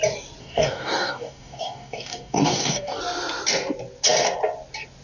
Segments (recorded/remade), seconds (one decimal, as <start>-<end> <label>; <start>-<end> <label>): 0.0-0.4 recorded; 0.4-3.0 remade; 3.0-5.0 recorded